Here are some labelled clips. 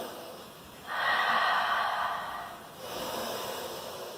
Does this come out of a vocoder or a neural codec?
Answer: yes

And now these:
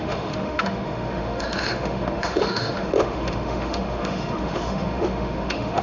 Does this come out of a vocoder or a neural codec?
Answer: yes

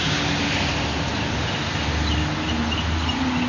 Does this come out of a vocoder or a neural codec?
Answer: no